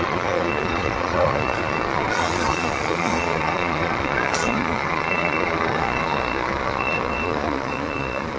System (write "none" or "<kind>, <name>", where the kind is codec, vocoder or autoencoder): vocoder, Vocos